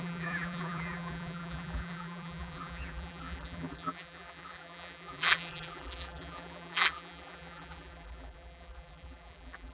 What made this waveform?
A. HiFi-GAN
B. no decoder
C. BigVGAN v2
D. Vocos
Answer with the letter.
C